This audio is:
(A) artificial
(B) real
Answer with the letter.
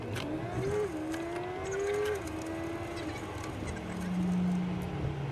B